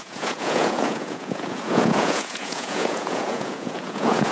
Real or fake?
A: fake